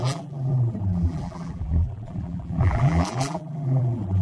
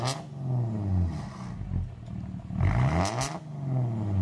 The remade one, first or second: first